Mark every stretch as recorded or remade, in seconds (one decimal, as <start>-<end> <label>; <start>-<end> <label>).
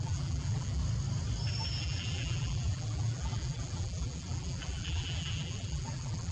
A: 0.0-0.8 remade; 0.8-1.8 recorded; 1.8-6.3 remade